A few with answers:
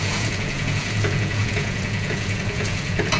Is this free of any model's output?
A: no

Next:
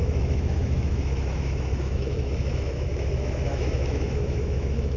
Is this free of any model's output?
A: no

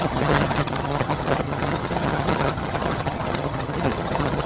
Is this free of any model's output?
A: no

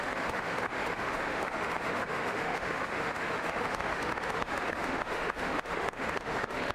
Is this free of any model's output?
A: no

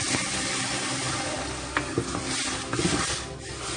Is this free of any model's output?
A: yes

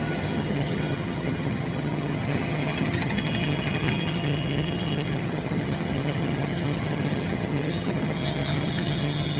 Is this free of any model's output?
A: no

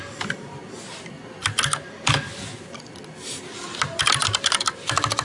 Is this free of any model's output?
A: yes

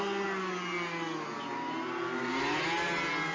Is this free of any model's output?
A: yes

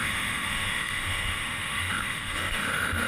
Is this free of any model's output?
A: no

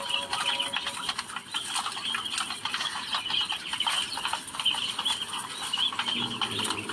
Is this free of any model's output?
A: yes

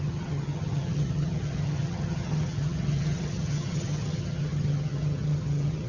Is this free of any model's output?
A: no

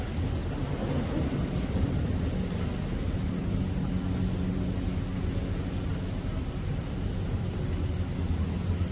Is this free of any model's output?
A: yes